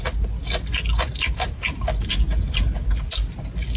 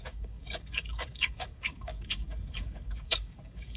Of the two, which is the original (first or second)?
first